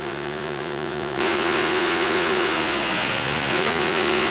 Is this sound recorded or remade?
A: remade